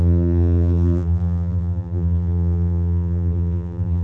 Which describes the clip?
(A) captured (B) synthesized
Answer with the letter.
B